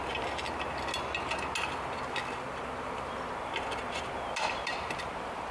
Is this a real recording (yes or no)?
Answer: yes